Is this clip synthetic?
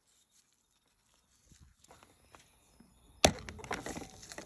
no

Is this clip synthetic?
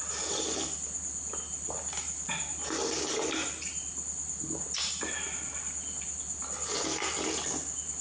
no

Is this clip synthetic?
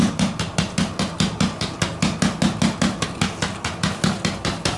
no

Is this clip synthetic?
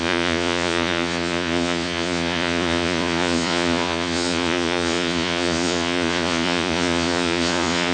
yes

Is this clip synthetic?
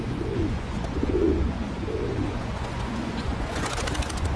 yes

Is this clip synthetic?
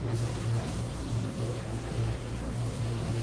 yes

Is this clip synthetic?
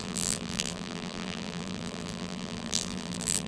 yes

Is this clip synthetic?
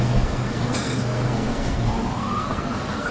yes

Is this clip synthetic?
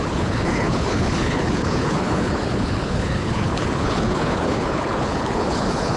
yes